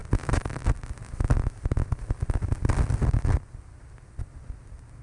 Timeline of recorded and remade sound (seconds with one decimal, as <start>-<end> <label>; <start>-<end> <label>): 0.0-5.0 recorded